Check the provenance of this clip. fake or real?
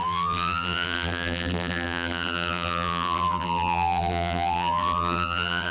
fake